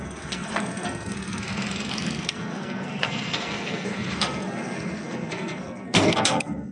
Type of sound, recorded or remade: remade